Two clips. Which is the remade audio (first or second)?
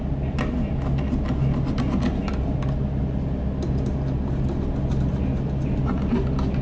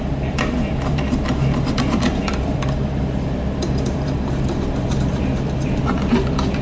second